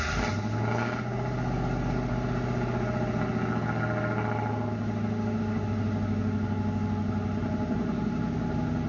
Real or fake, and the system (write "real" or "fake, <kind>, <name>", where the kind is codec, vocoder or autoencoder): real